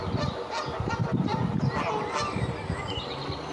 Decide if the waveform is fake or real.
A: real